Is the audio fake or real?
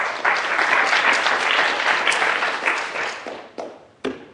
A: real